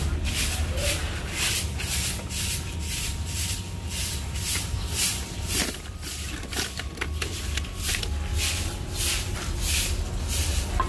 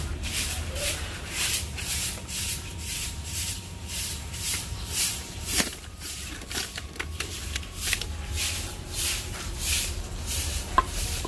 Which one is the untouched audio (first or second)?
first